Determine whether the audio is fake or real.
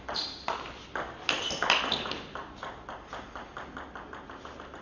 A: real